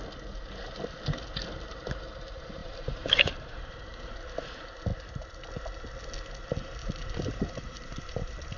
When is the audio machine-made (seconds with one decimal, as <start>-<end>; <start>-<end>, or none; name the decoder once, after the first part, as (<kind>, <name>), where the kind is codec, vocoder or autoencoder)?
2.6-4.1 (vocoder, BigVGAN v2); 6.8-8.6